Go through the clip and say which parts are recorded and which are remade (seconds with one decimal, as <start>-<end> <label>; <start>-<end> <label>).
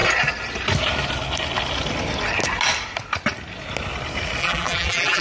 0.0-4.4 recorded; 4.4-5.2 remade